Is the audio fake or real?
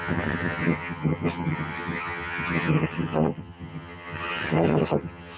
fake